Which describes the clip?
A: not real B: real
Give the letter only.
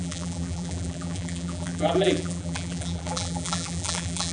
A